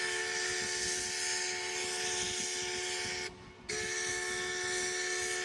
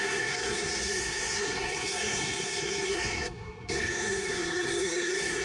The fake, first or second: second